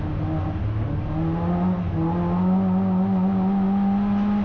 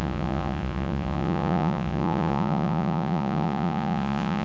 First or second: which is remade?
second